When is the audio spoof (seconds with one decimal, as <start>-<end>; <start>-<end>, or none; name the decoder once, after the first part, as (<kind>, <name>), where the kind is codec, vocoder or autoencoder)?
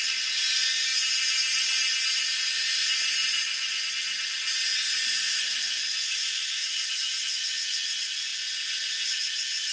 3.2-3.9 (vocoder, BigVGAN v2)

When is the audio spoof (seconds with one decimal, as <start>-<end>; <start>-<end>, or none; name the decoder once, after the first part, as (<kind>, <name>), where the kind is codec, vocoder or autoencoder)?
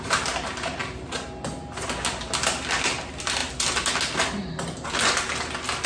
3.4-3.9 (vocoder, BigVGAN v2)